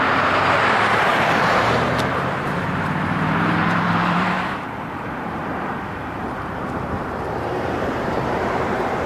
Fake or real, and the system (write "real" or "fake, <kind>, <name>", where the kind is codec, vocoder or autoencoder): fake, vocoder, BigVGAN v2